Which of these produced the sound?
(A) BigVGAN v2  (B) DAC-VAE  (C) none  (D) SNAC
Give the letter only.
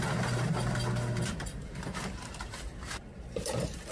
A